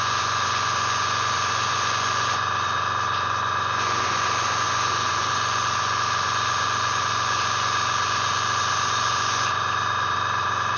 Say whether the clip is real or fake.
fake